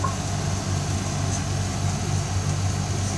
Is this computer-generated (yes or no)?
no